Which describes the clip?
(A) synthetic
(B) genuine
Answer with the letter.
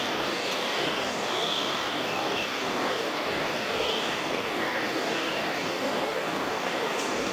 A